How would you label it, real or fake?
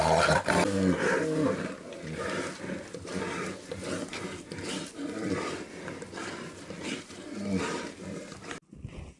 real